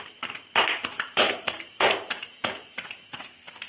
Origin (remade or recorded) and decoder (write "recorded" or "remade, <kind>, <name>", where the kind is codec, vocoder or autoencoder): remade, vocoder, BigVGAN v2